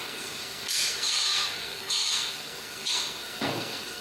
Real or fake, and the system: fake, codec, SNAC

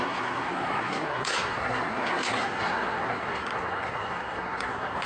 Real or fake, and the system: fake, codec, SNAC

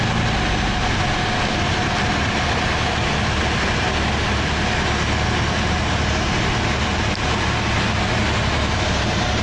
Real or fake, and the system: real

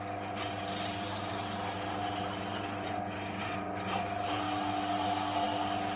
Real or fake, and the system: real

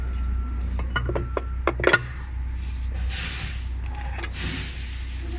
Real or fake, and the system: real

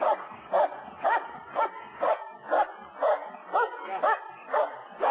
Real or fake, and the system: real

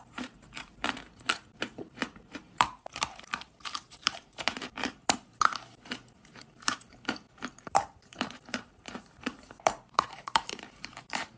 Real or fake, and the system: fake, vocoder, BigVGAN v2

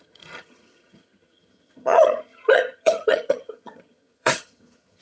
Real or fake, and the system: fake, vocoder, HiFi-GAN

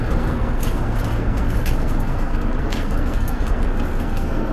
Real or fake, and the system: fake, codec, SNAC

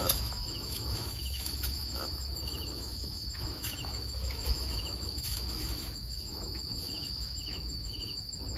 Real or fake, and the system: fake, autoencoder, DAC-VAE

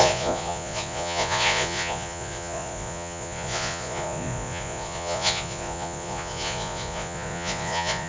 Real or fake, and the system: fake, vocoder, Vocos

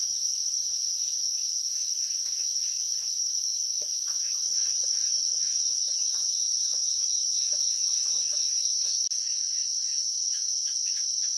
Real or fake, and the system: fake, autoencoder, DAC-VAE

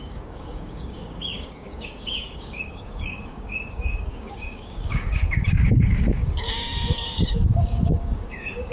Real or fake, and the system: fake, codec, DAC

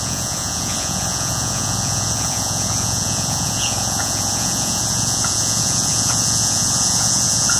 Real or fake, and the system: fake, vocoder, Vocos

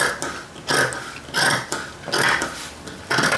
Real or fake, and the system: real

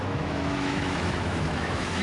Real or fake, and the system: fake, autoencoder, DAC-VAE